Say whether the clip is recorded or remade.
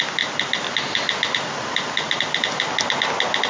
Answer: recorded